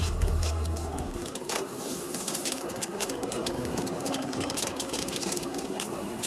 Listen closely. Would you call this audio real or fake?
fake